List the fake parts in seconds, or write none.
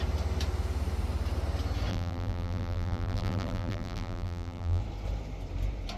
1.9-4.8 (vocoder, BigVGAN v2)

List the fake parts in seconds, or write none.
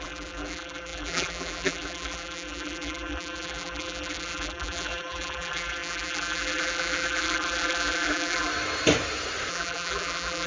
0.0-8.5 (vocoder, BigVGAN v2); 9.5-10.5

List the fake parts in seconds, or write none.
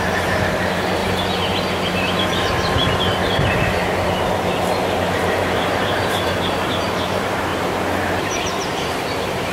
0.0-1.0 (vocoder, BigVGAN v2); 1.9-2.8; 5.1-7.5; 8.2-9.5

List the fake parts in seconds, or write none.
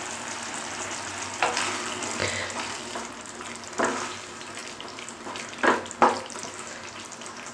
none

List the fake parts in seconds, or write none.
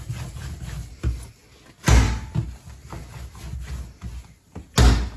none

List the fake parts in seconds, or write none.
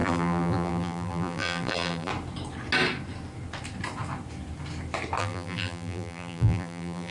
0.0-2.1 (vocoder, BigVGAN v2); 5.2-7.1